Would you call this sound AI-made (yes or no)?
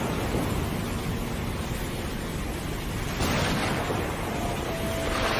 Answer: no